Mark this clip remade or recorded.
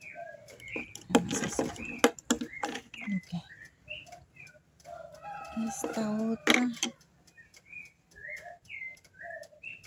recorded